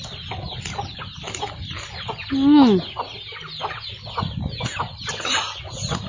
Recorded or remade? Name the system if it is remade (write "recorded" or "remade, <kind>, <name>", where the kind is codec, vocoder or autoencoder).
recorded